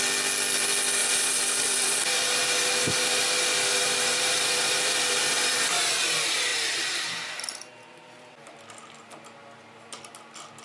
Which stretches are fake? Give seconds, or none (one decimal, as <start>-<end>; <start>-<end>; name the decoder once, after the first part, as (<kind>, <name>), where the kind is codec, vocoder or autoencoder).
1.0-3.2 (vocoder, BigVGAN v2); 3.7-5.9